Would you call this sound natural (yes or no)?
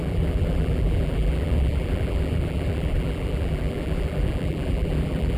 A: no